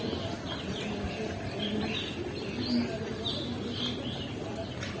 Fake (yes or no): no